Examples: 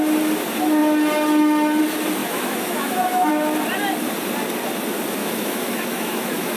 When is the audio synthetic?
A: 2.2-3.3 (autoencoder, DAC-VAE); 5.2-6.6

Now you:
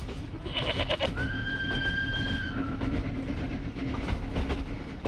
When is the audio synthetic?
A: 0.0-3.1 (autoencoder, DAC-VAE); 3.6-5.1

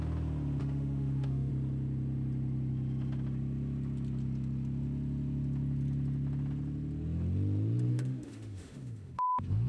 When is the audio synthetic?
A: 0.6-1.5 (autoencoder, DAC-VAE); 7.9-9.7

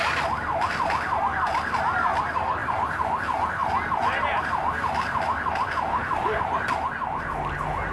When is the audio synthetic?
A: 5.9-6.4 (autoencoder, DAC-VAE)

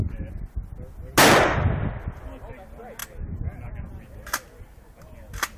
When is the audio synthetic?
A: none

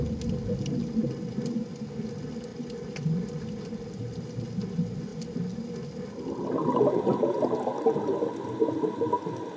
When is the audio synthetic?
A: none